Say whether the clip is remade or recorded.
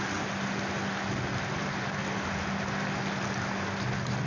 recorded